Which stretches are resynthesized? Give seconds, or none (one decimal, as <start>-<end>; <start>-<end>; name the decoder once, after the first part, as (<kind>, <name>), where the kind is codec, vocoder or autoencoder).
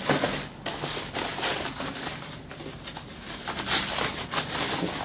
none